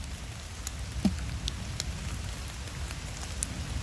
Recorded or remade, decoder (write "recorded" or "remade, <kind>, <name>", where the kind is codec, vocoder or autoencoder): recorded